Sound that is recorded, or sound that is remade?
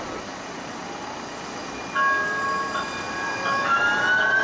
recorded